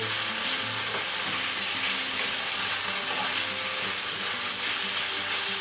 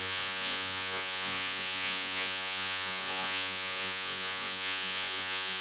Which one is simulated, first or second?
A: second